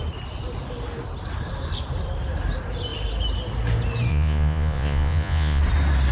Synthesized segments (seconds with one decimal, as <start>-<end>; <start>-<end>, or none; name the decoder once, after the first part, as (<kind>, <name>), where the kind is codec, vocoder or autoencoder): 4.1-5.6 (vocoder, Vocos)